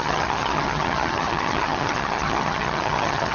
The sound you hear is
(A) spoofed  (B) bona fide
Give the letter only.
A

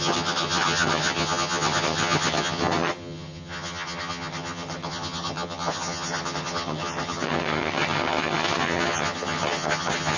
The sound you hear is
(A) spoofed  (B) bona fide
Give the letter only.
A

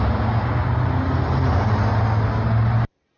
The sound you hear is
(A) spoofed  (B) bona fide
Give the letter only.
B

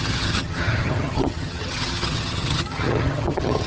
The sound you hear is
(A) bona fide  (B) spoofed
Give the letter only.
B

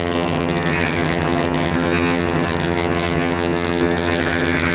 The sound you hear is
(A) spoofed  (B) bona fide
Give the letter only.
A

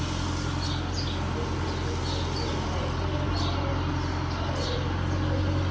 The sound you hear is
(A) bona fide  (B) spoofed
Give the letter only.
A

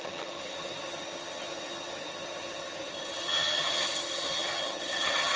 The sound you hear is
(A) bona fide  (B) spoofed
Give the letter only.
B